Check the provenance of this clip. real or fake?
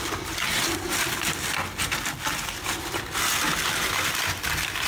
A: real